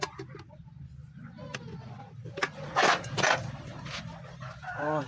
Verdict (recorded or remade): recorded